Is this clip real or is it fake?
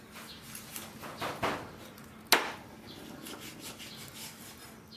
real